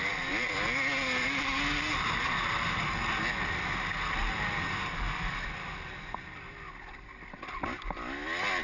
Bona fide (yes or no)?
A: yes